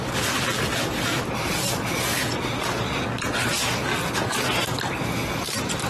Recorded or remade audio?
recorded